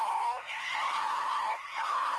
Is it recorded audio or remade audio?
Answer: remade